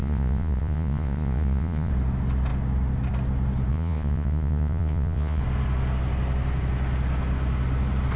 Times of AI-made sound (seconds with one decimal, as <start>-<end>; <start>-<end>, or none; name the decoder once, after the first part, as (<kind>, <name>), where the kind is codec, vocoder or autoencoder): 0.0-1.9 (vocoder, Vocos); 3.7-5.4